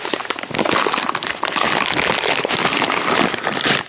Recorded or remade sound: recorded